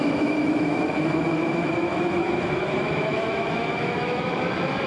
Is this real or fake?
fake